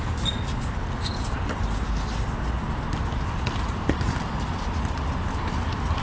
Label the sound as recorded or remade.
recorded